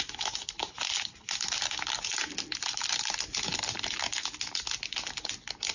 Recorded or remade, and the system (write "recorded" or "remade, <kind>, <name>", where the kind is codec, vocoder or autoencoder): recorded